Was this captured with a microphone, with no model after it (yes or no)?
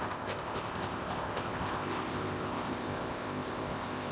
no